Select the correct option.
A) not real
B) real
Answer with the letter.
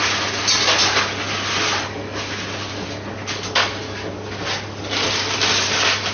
B